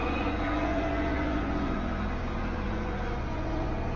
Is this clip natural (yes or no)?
no